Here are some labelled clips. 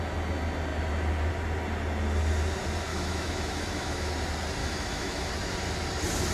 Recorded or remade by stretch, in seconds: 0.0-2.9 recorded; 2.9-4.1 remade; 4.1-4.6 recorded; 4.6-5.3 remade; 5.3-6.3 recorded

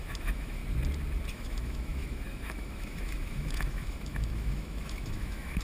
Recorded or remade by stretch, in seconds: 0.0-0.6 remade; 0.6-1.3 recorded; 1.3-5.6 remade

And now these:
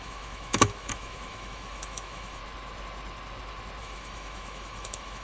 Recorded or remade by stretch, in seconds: 0.0-2.4 remade; 2.4-3.8 recorded; 3.8-5.2 remade